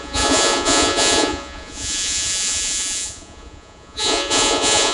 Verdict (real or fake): fake